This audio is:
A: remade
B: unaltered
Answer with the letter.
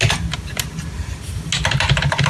B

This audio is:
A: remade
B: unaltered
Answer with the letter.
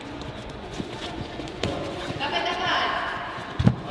A